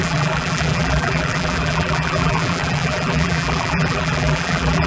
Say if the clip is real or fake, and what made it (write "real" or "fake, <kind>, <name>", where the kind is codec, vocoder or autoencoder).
fake, vocoder, BigVGAN v2